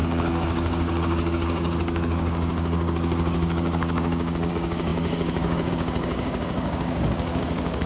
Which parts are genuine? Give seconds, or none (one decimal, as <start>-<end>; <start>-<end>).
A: none